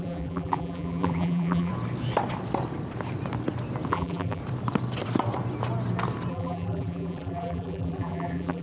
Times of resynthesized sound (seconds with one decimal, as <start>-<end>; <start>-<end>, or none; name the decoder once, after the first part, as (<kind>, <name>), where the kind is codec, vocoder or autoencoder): 0.0-1.7 (vocoder, BigVGAN v2); 3.9-4.4; 6.3-8.6